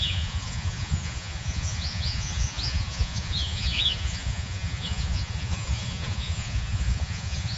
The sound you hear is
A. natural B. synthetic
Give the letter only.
B